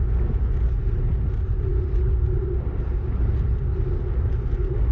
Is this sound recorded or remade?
recorded